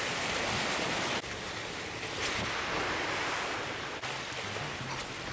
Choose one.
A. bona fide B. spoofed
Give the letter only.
A